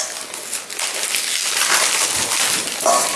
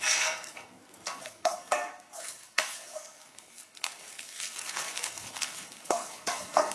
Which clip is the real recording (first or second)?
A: first